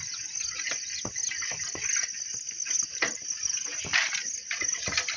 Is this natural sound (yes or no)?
yes